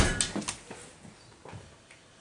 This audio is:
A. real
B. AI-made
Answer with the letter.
A